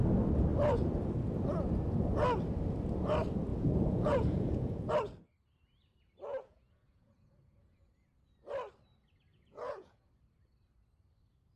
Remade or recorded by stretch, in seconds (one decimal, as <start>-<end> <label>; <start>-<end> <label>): 0.0-3.5 recorded; 3.5-4.9 remade; 4.9-6.3 recorded; 6.3-7.9 remade; 7.9-9.3 recorded; 9.3-10.1 remade; 10.1-11.6 recorded